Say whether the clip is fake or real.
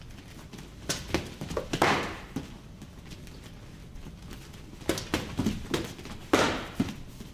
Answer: fake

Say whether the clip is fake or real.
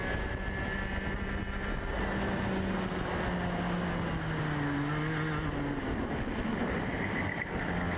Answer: real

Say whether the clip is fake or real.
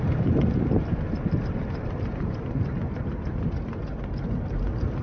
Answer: real